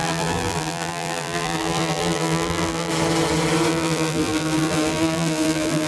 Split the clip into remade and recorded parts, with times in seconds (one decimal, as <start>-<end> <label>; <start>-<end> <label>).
0.0-2.9 remade; 2.9-3.7 recorded; 3.7-5.9 remade